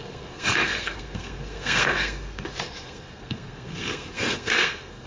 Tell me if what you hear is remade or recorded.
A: remade